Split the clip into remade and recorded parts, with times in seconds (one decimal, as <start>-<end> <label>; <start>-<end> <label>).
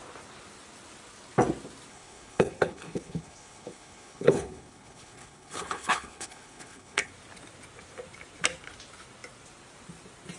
0.0-1.9 recorded; 1.9-7.1 remade; 7.1-10.4 recorded